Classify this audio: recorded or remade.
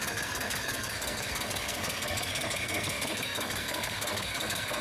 remade